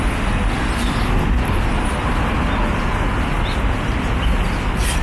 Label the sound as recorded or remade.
recorded